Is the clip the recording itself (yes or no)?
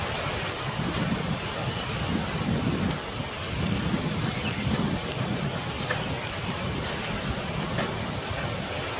yes